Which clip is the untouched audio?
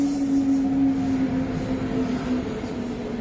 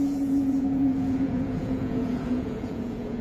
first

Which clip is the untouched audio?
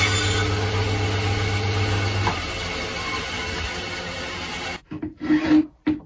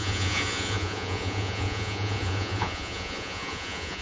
first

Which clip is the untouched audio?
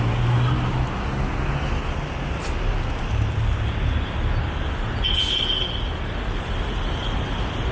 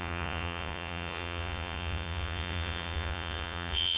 first